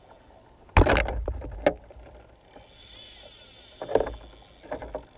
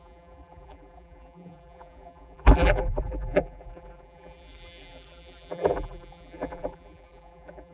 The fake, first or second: second